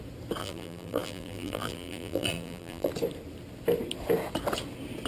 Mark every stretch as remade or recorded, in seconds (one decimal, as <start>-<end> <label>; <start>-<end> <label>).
0.0-0.4 recorded; 0.4-2.9 remade; 2.9-5.1 recorded